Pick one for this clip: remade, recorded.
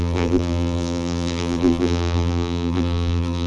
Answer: remade